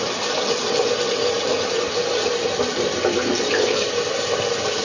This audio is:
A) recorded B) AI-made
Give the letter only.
A